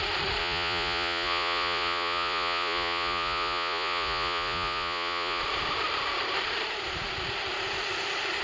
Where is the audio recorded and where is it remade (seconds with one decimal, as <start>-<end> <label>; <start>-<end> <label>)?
0.0-0.4 recorded; 0.4-5.4 remade; 5.4-8.4 recorded